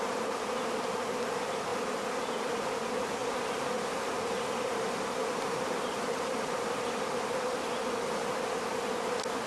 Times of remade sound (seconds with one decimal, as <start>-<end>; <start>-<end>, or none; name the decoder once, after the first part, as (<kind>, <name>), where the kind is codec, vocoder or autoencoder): 3.2-8.2 (vocoder, BigVGAN v2)